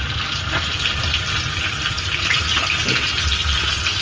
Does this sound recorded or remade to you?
recorded